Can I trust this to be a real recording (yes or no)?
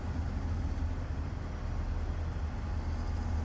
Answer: yes